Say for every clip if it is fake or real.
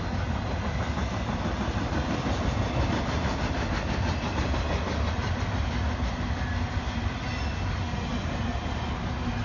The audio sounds real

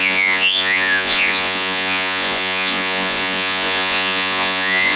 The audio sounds fake